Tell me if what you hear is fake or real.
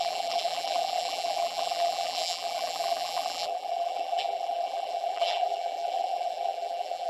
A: fake